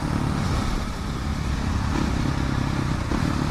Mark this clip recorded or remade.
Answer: recorded